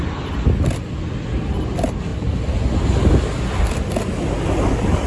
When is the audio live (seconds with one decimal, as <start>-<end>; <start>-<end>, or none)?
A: 0.0-5.1